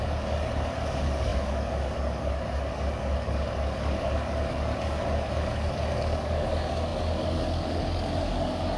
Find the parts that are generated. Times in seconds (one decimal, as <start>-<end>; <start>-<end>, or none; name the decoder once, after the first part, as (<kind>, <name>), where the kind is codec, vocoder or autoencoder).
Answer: 0.0-8.8 (codec, DAC)